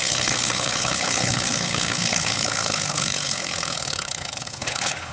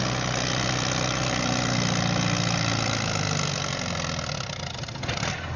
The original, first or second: second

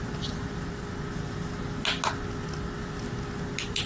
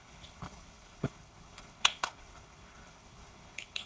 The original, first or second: first